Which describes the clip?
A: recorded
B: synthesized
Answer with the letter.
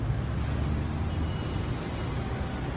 A